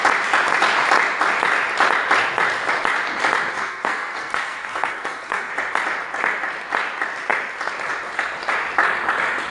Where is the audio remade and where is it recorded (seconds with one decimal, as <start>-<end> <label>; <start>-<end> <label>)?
0.0-3.5 recorded; 3.5-5.5 remade; 5.5-9.5 recorded